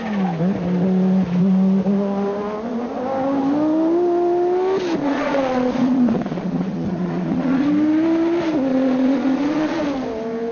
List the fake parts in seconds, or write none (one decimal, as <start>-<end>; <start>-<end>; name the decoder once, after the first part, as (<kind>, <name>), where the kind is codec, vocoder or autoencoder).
5.0-7.7 (vocoder, Vocos); 8.7-9.8